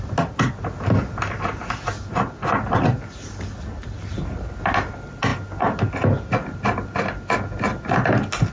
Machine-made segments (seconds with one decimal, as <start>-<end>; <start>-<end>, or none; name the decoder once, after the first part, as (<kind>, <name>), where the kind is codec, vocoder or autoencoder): none